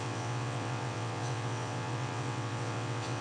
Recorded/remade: remade